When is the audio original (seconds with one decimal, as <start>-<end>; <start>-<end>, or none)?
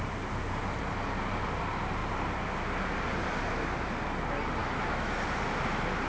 0.0-4.6; 5.1-6.1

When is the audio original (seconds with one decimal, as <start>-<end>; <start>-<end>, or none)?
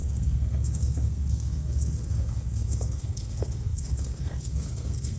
none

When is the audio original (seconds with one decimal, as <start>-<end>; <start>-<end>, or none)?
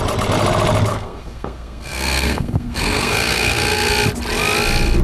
0.0-0.9; 3.9-5.0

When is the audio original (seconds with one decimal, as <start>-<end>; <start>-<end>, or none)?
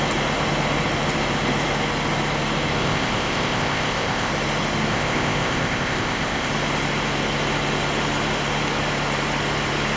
0.0-2.8; 4.3-4.9; 6.5-10.0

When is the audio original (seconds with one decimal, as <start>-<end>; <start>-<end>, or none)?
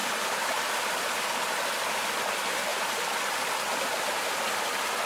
0.0-5.1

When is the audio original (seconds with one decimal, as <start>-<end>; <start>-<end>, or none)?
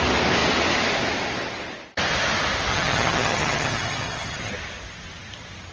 0.0-2.7; 4.5-5.7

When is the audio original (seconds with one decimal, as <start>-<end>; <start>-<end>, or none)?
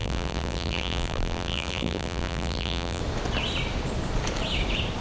3.0-5.0